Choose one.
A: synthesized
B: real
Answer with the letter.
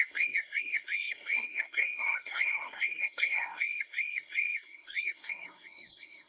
A